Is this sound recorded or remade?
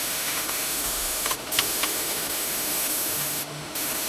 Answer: remade